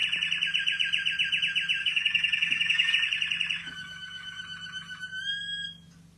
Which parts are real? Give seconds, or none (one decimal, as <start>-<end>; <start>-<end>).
0.0-1.8; 2.9-3.6; 4.4-6.2